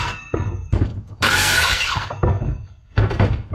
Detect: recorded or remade remade